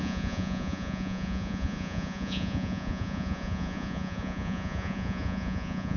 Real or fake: fake